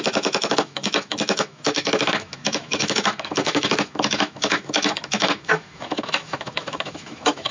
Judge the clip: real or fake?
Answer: fake